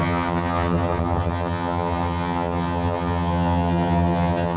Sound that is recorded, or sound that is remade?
remade